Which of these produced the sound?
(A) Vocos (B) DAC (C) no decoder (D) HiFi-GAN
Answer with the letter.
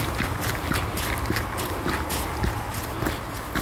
C